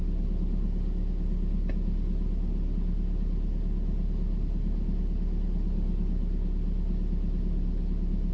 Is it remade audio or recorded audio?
recorded